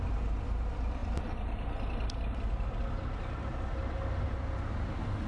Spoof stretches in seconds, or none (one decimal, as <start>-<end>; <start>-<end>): none